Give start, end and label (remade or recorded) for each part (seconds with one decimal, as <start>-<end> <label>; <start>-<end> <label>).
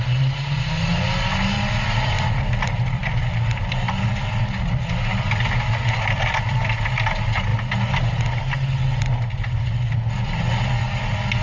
0.0-11.4 recorded